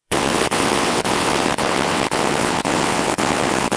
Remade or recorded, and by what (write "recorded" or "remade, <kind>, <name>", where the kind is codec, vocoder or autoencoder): remade, vocoder, WaveNeXt